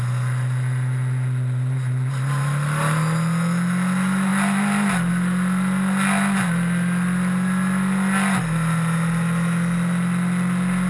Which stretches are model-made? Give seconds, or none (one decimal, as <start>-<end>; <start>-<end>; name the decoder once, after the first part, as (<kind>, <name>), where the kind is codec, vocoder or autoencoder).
none